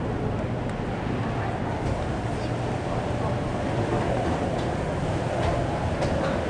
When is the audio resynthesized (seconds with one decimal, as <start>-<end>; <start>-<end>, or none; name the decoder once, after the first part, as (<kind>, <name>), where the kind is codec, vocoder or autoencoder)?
none